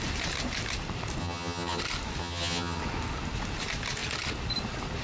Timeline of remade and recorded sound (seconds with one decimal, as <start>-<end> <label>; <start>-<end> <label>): 0.0-1.2 recorded; 1.2-1.8 remade; 1.8-2.2 recorded; 2.2-2.8 remade; 2.8-5.0 recorded